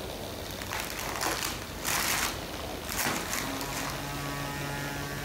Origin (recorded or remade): recorded